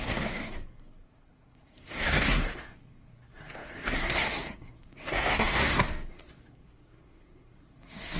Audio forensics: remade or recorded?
remade